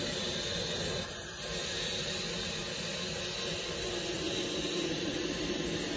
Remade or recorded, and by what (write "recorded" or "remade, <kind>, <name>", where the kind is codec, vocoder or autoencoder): recorded